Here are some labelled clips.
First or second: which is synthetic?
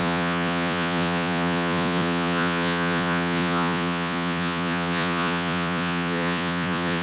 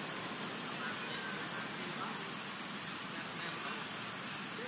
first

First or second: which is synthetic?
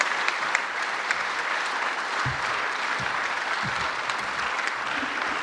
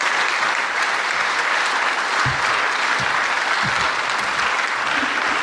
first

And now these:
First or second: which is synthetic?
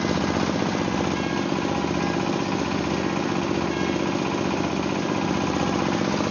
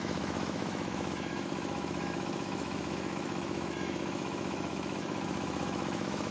second